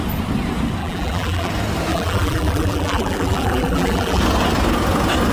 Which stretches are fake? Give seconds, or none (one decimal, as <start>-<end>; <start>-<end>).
0.8-1.5; 1.9-4.2

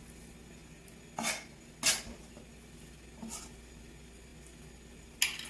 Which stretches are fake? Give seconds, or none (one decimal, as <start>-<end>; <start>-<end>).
none

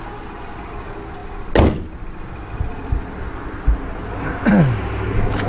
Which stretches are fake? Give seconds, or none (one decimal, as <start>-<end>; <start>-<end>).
none

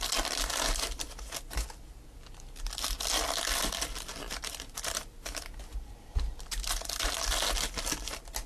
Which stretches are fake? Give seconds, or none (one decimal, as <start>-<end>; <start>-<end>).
none

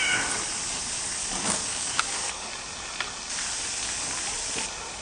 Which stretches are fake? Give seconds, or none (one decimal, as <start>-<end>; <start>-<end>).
1.2-2.5

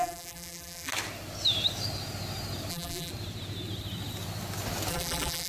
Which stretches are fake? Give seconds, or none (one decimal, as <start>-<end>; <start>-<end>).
0.0-0.9; 2.7-3.1; 4.9-5.5

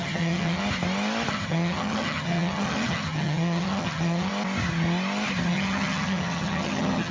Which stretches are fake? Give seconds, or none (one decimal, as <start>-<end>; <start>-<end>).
0.0-0.6; 1.3-4.3; 5.5-7.1